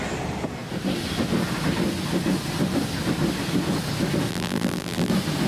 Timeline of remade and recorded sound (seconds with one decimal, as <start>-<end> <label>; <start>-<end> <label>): 0.0-4.3 recorded; 4.3-5.1 remade; 5.1-5.5 recorded